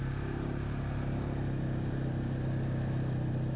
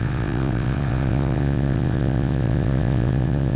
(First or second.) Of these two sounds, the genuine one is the first